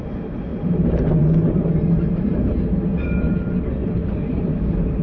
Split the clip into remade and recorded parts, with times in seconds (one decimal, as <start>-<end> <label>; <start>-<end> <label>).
0.0-0.5 recorded; 0.5-3.5 remade; 3.5-4.0 recorded; 4.0-5.0 remade